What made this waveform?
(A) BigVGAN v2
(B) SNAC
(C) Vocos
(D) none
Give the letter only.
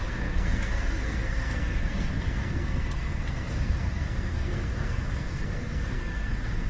B